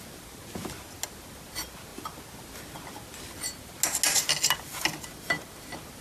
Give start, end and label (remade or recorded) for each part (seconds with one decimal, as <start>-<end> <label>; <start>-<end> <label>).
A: 0.0-6.0 recorded